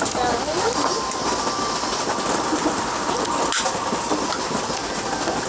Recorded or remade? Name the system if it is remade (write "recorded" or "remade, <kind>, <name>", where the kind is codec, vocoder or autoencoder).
recorded